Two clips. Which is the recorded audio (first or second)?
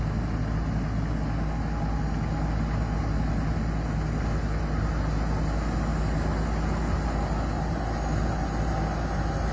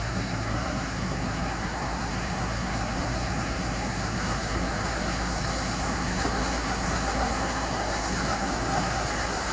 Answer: first